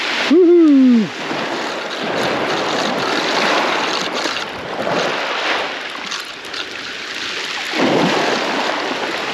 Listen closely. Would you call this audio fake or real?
real